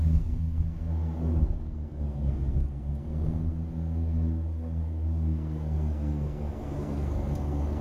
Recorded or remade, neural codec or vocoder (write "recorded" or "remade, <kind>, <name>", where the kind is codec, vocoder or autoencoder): remade, codec, SNAC